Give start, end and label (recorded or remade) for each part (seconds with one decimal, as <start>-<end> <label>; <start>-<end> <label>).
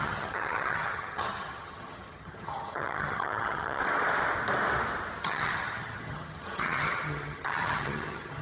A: 0.0-3.8 remade; 3.8-5.2 recorded; 5.2-8.4 remade